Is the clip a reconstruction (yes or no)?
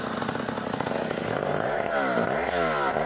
no